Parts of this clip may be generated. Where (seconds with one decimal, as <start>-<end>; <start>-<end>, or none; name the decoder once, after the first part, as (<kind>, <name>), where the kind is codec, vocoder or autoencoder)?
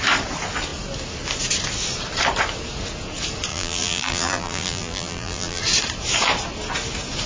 3.5-5.6 (vocoder, BigVGAN v2)